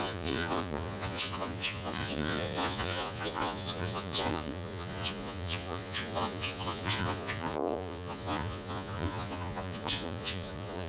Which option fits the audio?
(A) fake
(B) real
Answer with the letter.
A